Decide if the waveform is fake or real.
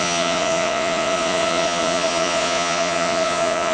fake